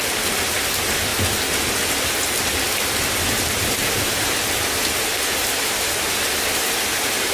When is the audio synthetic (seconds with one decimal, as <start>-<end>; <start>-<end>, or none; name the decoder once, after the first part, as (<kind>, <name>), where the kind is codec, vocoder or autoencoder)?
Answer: 0.0-1.1 (vocoder, BigVGAN v2); 3.3-7.3

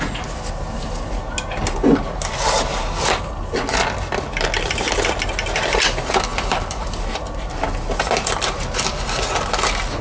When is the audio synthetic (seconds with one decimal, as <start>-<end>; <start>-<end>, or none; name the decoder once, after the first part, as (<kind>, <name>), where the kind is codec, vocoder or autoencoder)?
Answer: 6.3-7.1 (vocoder, BigVGAN v2)

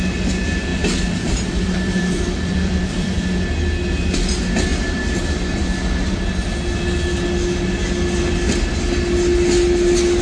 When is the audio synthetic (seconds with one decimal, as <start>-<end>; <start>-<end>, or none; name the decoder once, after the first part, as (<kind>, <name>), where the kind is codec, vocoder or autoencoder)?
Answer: 0.7-3.4 (vocoder, BigVGAN v2)

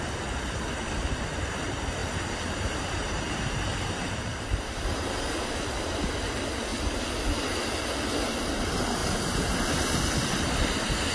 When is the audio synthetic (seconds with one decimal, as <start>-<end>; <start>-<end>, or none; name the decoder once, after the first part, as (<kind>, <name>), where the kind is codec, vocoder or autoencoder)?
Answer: 2.0-6.1 (vocoder, BigVGAN v2)

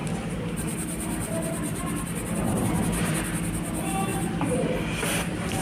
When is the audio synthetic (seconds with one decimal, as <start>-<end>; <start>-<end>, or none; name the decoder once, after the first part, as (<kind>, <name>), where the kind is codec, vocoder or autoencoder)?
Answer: 0.0-4.1 (vocoder, BigVGAN v2); 4.8-5.6

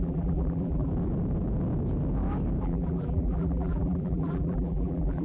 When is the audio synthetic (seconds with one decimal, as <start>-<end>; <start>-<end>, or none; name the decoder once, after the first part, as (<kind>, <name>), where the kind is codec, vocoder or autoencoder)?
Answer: 0.0-0.9 (vocoder, BigVGAN v2); 2.6-5.2

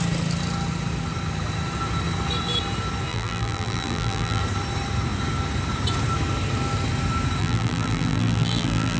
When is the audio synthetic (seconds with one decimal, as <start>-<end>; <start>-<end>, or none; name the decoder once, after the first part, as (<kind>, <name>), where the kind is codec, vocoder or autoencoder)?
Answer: 3.1-4.4 (vocoder, BigVGAN v2); 7.4-9.0

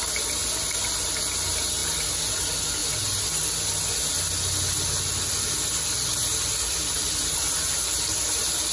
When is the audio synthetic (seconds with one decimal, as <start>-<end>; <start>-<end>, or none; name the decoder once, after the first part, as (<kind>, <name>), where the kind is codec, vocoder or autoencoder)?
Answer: none